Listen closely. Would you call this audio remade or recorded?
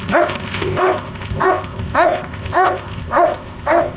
remade